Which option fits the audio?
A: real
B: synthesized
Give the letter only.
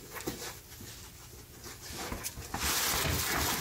A